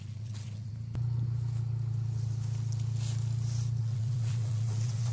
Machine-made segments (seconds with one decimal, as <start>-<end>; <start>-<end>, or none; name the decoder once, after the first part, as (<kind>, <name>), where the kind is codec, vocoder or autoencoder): 0.0-0.7 (vocoder, WaveNeXt); 3.8-5.1